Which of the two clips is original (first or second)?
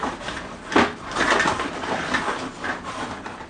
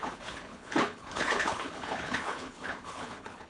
first